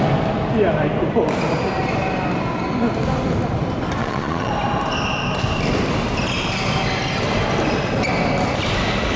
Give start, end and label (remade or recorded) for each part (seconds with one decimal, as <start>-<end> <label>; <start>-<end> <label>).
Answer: 0.0-4.0 recorded; 4.0-4.5 remade; 4.5-9.2 recorded